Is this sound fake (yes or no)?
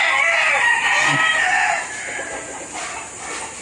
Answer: no